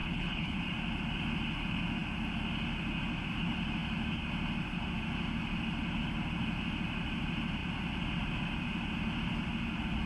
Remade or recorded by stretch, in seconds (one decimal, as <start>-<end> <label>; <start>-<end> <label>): 0.0-0.6 remade; 0.6-10.1 recorded